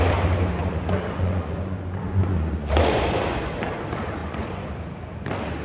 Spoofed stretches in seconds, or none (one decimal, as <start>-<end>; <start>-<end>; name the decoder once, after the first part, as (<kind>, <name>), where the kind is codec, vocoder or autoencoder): 0.6-3.5 (vocoder, Vocos); 4.2-4.7